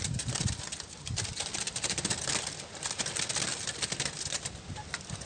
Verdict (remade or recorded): recorded